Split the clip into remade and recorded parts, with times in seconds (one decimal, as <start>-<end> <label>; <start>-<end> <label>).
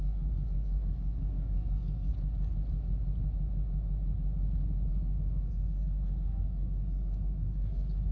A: 0.0-2.1 remade; 2.1-4.9 recorded; 4.9-8.1 remade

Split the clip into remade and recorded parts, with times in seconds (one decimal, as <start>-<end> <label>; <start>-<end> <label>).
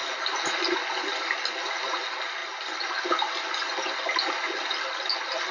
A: 0.0-5.5 recorded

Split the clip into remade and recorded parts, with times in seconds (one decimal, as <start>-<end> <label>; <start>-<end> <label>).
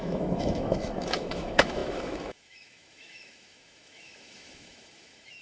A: 0.0-5.4 remade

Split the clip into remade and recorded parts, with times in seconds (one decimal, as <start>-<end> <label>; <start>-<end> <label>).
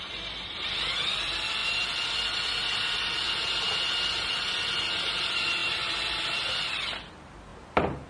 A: 0.0-5.6 remade; 5.6-6.5 recorded; 6.5-8.1 remade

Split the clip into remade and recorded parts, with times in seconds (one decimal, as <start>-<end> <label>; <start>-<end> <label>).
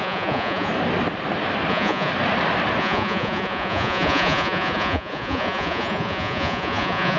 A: 0.0-0.7 remade; 0.7-1.7 recorded; 1.7-2.1 remade; 2.1-2.8 recorded; 2.8-7.2 remade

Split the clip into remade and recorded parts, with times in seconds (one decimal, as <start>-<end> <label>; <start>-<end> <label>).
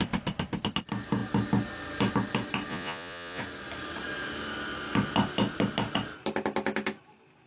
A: 0.0-2.7 recorded; 2.7-3.4 remade; 3.4-7.5 recorded